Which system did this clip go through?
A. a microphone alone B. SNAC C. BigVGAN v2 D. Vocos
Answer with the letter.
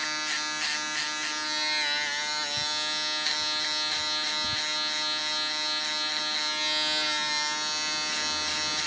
A